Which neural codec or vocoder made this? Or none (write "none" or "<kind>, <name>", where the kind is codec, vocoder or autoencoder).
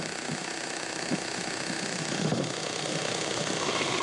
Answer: autoencoder, DAC-VAE